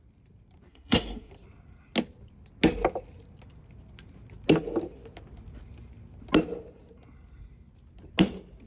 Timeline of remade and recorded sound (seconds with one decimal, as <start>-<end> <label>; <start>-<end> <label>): 0.0-0.7 recorded; 0.7-1.3 remade; 1.3-8.7 recorded